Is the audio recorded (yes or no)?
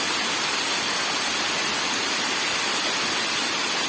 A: yes